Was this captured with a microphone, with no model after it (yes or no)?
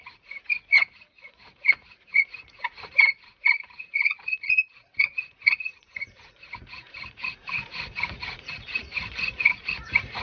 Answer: no